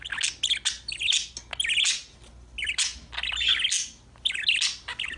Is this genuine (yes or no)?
yes